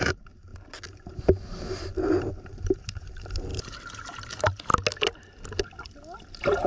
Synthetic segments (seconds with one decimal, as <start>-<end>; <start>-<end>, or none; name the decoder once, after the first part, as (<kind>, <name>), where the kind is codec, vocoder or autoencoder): 0.0-0.5 (vocoder, BigVGAN v2); 2.2-4.7; 6.2-6.7